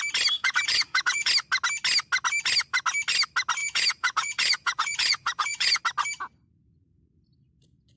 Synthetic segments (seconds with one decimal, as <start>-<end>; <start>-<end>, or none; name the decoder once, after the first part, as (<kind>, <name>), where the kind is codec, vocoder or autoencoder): 0.4-1.3 (vocoder, Vocos); 3.6-5.8